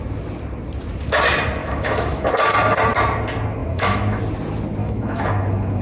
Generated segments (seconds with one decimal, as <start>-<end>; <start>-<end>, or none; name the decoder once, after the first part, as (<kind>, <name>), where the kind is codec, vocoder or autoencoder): 1.6-2.3 (autoencoder, DAC-VAE); 3.6-4.2; 4.8-5.8